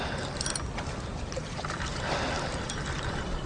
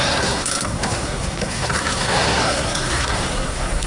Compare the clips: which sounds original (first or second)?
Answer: first